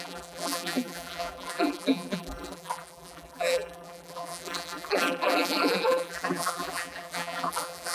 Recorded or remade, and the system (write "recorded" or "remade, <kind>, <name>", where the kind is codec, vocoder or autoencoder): remade, vocoder, BigVGAN v2